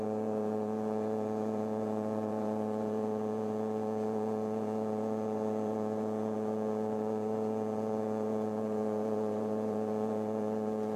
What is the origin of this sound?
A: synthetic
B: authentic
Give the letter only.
A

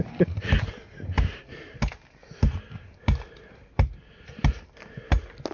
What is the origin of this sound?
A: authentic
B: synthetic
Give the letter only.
A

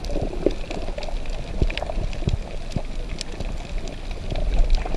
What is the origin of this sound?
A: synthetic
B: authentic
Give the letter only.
B